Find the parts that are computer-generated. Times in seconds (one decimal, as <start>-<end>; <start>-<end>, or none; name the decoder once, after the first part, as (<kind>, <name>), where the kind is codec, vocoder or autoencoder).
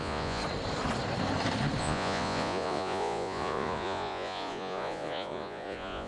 0.0-0.4 (vocoder, Vocos); 1.8-6.1